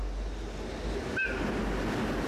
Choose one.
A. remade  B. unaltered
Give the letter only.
B